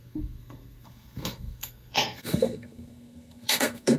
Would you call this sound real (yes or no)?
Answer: no